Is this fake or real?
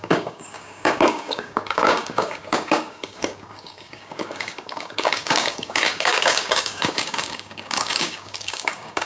fake